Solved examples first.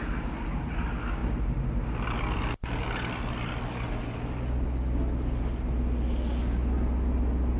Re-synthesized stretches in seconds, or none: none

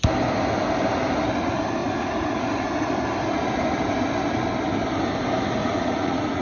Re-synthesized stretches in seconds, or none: 1.8-2.9 (vocoder, Vocos); 5.6-6.4

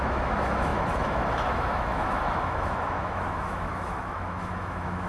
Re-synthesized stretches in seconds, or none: 0.0-5.1 (autoencoder, DAC-VAE)

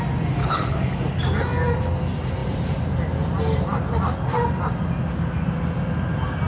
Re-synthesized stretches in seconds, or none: 0.4-1.0 (codec, HILCodec)

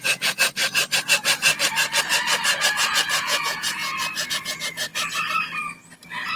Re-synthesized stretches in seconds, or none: 0.0-0.6 (vocoder, Vocos); 2.6-3.8; 4.3-4.9

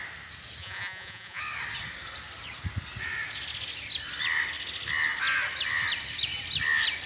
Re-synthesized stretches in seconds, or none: 0.6-1.4 (vocoder, Vocos)

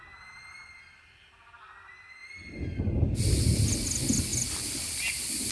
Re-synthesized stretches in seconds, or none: none